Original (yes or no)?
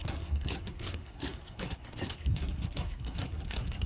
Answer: no